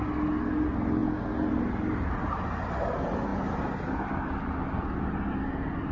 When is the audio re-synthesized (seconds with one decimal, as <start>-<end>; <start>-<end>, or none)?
none